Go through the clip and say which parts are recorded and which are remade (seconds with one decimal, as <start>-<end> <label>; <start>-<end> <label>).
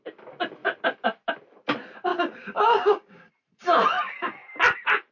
0.0-2.1 recorded; 2.1-3.3 remade; 3.3-5.1 recorded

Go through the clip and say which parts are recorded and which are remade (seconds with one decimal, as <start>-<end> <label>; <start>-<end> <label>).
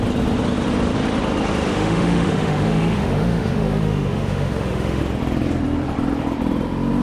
0.0-1.7 recorded; 1.7-5.0 remade; 5.0-7.0 recorded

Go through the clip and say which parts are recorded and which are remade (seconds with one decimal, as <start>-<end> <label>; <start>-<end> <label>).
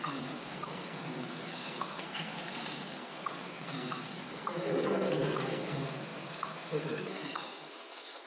0.0-8.3 remade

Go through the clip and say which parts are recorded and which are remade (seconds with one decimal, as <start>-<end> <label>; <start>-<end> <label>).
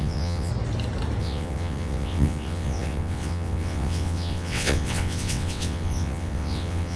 0.0-0.5 remade; 0.5-1.2 recorded; 1.2-7.0 remade